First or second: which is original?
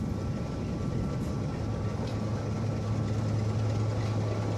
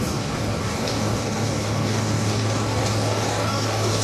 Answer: first